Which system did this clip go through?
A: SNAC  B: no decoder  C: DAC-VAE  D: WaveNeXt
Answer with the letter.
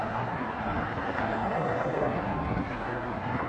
A